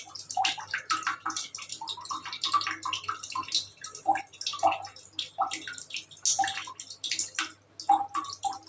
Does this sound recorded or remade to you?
recorded